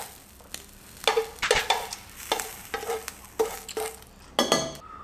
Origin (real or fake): real